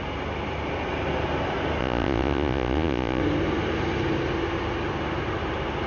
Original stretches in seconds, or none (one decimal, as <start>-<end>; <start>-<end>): 0.0-1.8; 3.2-5.9